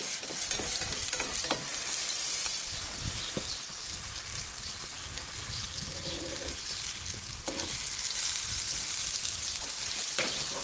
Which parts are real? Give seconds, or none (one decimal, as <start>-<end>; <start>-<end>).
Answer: 0.0-0.6; 1.7-2.3; 3.8-8.4